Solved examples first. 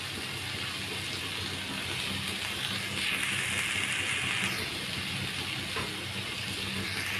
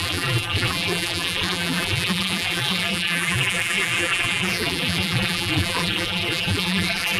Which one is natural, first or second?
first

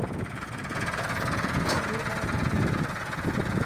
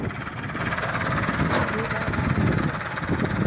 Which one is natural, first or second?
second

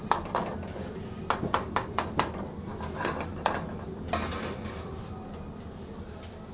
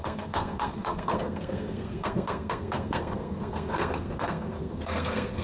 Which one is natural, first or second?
first